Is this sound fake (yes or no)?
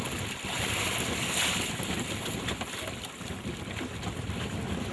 no